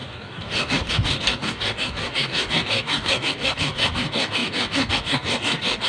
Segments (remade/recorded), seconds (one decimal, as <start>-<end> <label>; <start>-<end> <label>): 0.0-5.9 remade